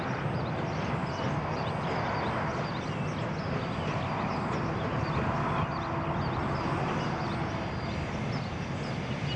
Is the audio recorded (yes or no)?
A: yes